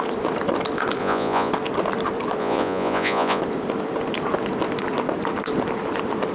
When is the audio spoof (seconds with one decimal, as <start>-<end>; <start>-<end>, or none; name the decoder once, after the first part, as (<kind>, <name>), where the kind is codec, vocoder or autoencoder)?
1.0-1.5 (vocoder, Vocos); 2.4-3.4